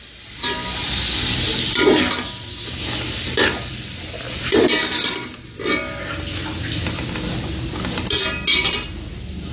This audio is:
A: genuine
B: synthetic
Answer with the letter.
A